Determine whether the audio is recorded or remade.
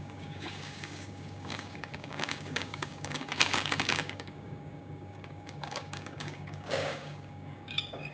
remade